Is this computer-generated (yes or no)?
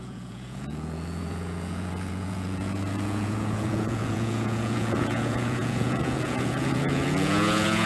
yes